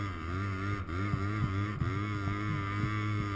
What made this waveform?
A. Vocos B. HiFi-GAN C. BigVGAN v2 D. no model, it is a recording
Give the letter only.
D